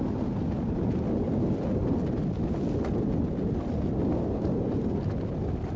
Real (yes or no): yes